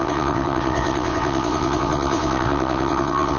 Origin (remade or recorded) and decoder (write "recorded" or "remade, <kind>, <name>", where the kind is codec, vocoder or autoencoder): remade, vocoder, WaveNeXt